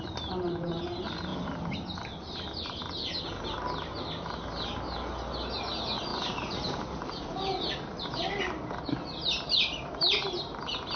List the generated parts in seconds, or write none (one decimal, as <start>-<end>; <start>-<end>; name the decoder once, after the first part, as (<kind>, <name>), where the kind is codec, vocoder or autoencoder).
none